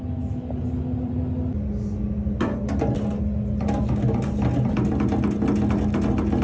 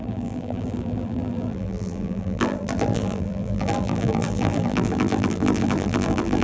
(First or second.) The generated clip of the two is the second